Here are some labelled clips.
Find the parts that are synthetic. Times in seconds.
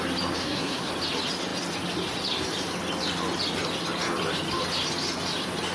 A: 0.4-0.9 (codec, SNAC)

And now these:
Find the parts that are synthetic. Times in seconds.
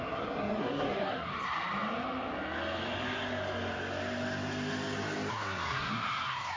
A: 0.0-1.3 (codec, SNAC); 5.3-6.6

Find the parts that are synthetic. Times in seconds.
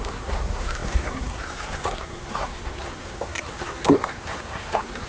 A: 0.0-5.1 (codec, SNAC)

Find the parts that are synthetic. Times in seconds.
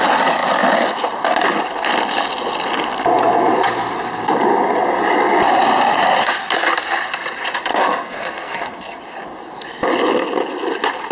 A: 7.7-9.0 (codec, SNAC)